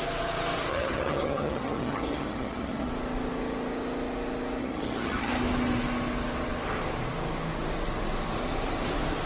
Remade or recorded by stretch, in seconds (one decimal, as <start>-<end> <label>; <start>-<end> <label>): 0.0-0.7 recorded; 0.7-2.9 remade; 2.9-4.6 recorded; 4.6-5.3 remade; 5.3-9.3 recorded